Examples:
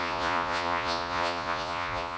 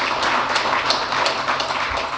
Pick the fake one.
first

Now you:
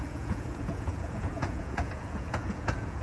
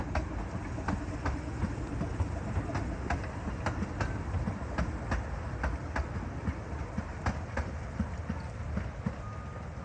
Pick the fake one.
first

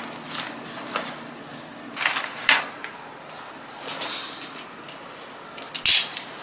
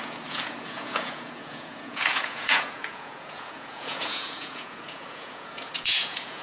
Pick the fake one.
second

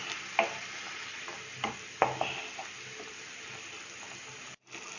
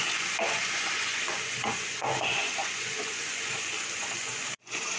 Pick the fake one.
second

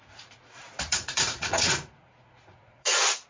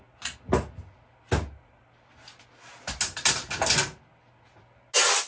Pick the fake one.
first